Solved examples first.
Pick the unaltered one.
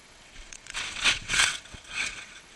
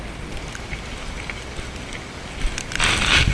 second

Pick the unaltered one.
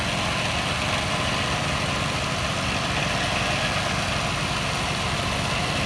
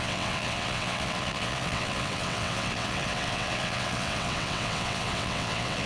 first